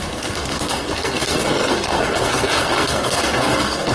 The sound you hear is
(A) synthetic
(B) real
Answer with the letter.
A